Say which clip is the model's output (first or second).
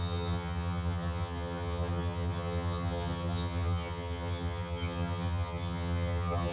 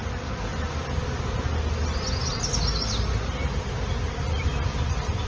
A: first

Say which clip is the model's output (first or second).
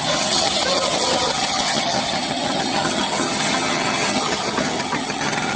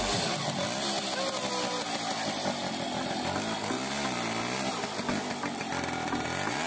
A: first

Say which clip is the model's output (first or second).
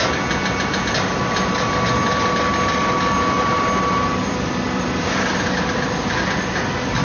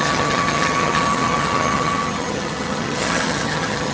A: second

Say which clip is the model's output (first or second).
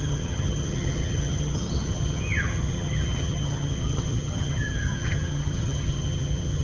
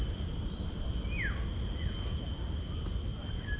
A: first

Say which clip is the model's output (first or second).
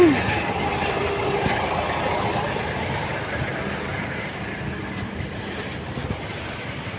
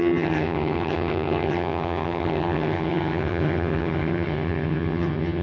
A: second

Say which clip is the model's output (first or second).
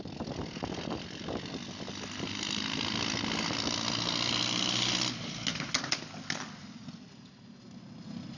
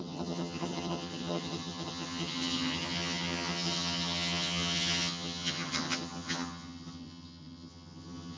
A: second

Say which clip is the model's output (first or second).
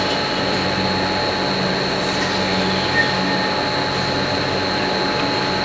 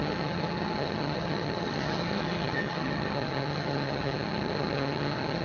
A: second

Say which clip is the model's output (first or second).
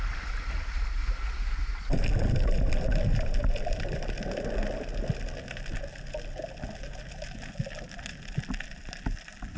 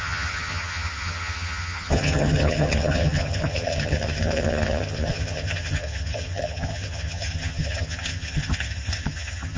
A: second